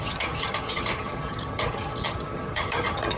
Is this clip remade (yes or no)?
yes